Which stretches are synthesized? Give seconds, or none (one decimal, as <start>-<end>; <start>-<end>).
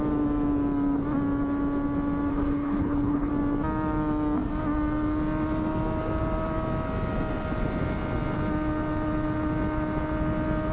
2.3-3.3